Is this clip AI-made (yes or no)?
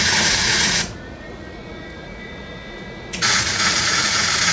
yes